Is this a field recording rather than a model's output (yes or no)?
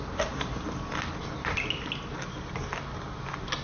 yes